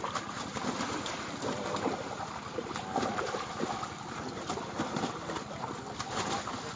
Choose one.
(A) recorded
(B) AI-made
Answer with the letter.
A